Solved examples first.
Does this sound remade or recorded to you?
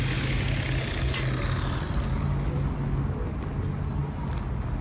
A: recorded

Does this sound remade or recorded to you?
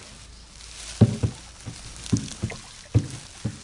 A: recorded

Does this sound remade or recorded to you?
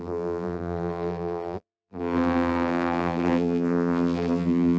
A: remade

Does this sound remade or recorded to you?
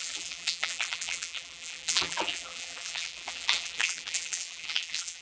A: remade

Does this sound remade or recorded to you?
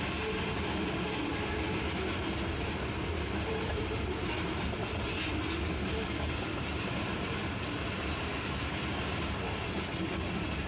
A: recorded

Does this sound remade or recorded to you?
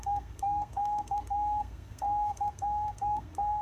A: remade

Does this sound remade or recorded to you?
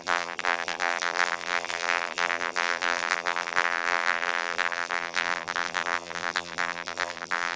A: remade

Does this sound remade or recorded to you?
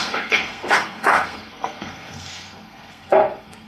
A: remade